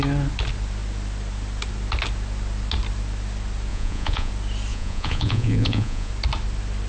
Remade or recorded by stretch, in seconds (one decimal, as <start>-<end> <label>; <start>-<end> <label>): 0.0-3.7 recorded; 3.7-4.3 remade; 4.3-4.7 recorded; 4.7-6.1 remade; 6.1-6.9 recorded